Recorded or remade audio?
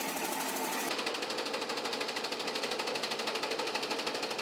recorded